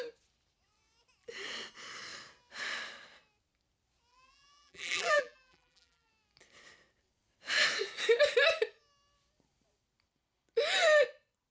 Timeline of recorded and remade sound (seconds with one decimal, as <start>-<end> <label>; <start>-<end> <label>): 0.0-4.1 recorded; 4.1-6.1 remade; 6.1-11.5 recorded